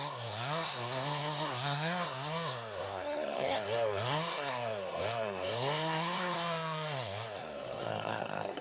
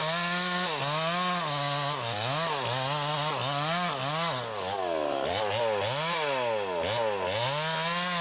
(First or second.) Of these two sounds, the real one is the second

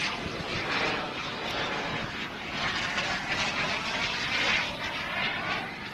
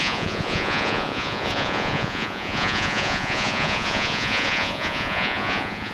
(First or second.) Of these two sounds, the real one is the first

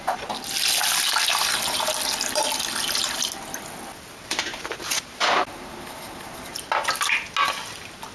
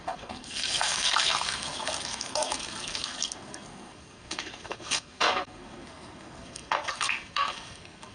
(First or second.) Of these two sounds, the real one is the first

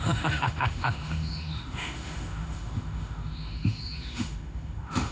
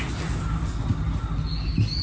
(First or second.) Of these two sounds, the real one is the second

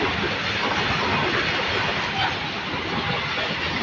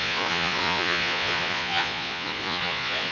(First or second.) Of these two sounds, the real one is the first